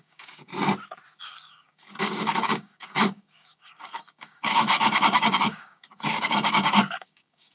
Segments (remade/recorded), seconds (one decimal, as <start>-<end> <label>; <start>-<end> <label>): 0.0-0.5 remade; 0.5-1.2 recorded; 1.2-7.5 remade